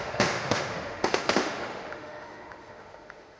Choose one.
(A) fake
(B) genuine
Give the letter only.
A